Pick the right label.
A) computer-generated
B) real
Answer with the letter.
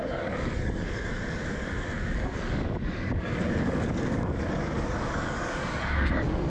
A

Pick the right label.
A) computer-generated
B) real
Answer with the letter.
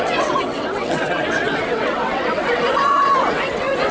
A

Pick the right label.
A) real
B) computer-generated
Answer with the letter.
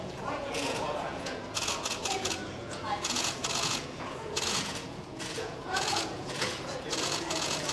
B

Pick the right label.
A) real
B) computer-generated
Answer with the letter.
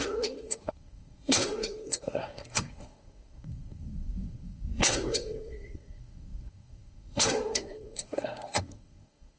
B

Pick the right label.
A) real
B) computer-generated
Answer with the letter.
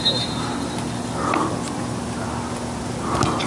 A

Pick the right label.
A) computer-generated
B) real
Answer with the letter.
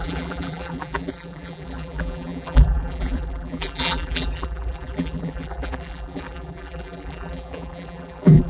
A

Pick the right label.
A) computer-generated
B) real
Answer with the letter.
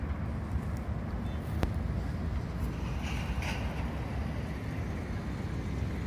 B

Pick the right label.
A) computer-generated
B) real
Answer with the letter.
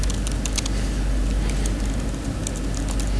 B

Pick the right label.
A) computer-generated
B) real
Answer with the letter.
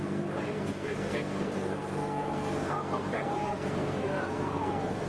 A